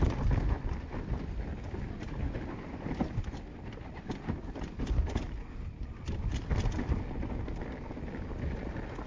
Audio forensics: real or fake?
real